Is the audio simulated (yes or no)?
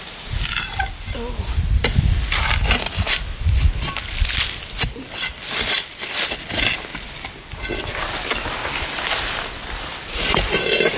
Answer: no